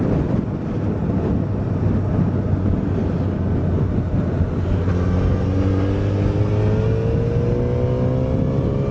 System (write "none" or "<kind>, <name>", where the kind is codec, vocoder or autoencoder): none